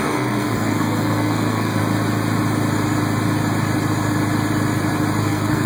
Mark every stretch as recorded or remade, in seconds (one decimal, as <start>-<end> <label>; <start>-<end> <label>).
0.0-1.8 remade; 1.8-5.2 recorded; 5.2-5.7 remade